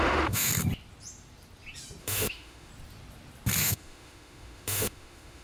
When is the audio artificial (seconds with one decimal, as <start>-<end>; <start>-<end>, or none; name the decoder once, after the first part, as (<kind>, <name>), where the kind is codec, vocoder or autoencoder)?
0.0-0.5 (autoencoder, DAC-VAE); 2.0-2.7; 3.6-5.4